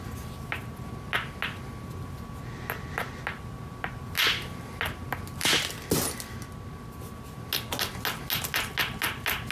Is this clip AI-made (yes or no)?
no